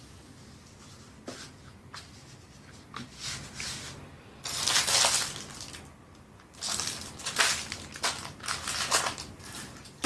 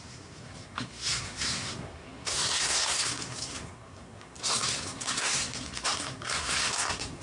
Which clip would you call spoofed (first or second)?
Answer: second